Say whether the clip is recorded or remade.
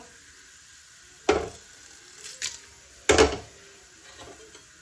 recorded